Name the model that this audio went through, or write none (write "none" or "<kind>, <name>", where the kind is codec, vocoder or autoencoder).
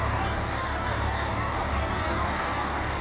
codec, DAC